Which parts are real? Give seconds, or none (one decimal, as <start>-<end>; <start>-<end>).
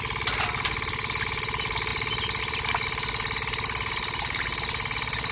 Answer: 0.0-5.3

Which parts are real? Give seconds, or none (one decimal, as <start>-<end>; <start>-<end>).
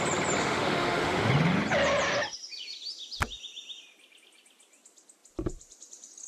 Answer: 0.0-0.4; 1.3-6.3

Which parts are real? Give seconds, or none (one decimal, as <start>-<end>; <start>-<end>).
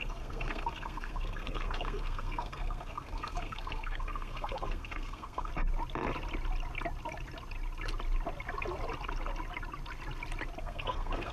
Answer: 5.5-10.6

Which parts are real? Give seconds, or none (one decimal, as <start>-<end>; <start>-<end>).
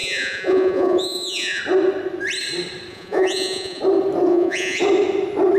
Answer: 1.6-2.9; 3.8-4.3; 4.8-5.6